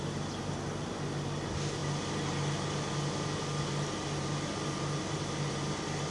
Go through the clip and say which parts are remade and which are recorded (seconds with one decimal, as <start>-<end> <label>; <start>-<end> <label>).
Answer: 0.0-6.1 recorded